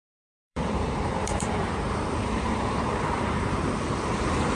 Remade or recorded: remade